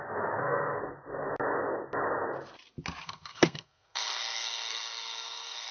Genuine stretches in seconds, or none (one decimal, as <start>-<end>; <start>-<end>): 0.8-3.0